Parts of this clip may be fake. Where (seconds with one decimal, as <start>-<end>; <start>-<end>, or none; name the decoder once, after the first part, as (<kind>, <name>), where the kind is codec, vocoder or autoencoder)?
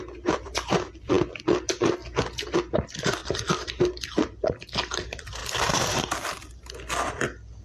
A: 0.0-2.0 (vocoder, BigVGAN v2); 2.6-5.4; 6.2-7.6